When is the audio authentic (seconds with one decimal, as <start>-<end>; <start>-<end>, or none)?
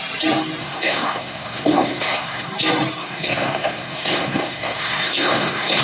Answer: 0.0-0.6; 2.5-3.0